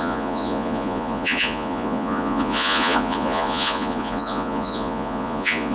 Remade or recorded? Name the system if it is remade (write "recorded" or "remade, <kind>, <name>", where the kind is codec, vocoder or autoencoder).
remade, vocoder, Vocos